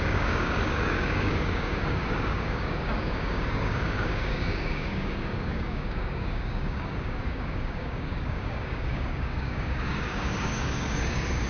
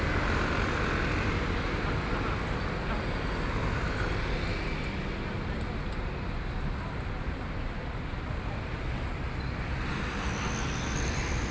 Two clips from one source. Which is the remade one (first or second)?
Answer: first